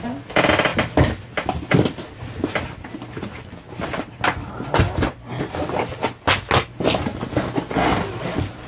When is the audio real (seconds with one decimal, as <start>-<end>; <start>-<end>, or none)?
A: 0.0-0.7; 2.0-8.7